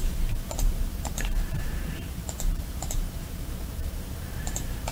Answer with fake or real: fake